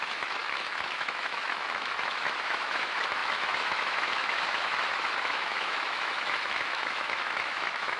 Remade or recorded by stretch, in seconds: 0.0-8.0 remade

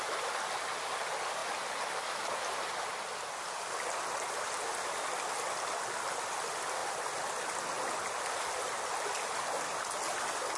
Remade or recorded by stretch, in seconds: 0.0-10.6 recorded

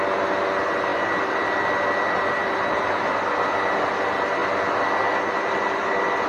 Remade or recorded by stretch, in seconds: 0.0-6.3 recorded

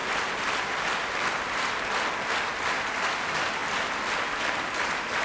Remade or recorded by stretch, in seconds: 0.0-5.2 recorded

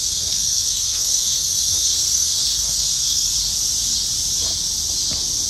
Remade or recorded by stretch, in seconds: 0.0-3.3 remade; 3.3-5.5 recorded

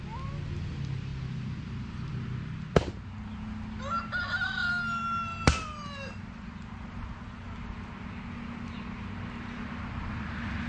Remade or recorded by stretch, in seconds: 0.0-10.7 recorded